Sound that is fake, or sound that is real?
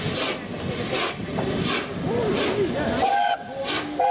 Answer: real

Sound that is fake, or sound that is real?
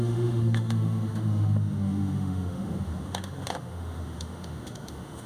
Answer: fake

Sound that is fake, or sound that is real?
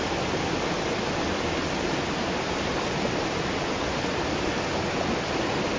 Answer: real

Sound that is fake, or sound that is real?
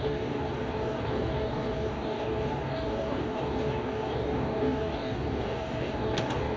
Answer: fake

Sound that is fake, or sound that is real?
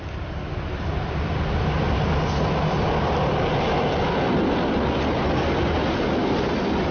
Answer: real